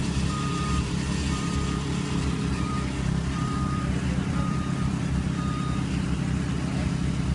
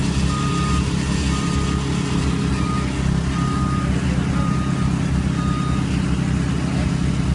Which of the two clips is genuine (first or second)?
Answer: second